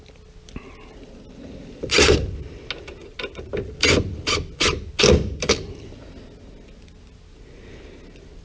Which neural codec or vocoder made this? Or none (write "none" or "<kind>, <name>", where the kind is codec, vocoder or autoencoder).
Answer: none